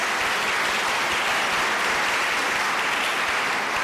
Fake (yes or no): no